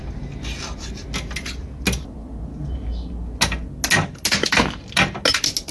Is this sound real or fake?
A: real